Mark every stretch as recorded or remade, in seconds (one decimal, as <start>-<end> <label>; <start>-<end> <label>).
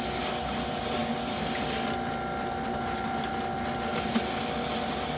0.0-5.2 recorded